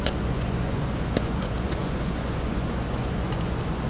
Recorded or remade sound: remade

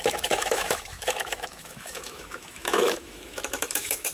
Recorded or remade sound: remade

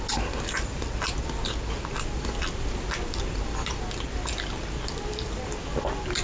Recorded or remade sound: recorded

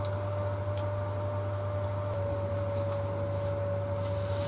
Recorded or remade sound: recorded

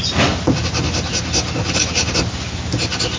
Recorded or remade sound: recorded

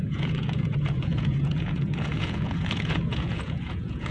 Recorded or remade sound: remade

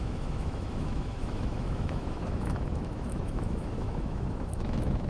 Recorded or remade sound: remade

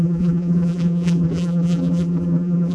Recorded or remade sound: remade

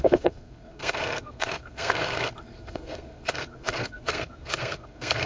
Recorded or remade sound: remade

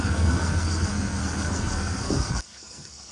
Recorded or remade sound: remade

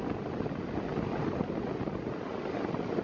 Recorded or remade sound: recorded